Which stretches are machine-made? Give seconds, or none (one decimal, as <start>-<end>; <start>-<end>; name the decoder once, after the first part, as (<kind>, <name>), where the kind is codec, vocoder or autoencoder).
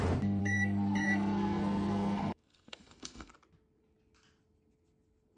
0.4-3.3 (codec, SNAC)